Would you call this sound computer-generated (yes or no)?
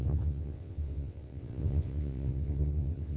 yes